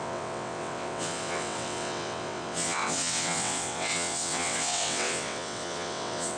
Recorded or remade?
remade